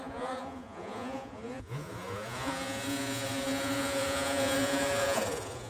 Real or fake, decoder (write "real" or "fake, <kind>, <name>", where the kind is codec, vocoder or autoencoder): fake, vocoder, Vocos